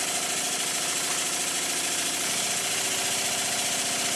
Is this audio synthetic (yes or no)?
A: no